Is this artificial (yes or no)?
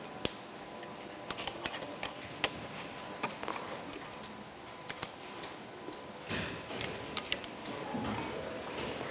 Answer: no